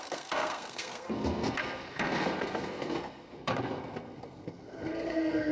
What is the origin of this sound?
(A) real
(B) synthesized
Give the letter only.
B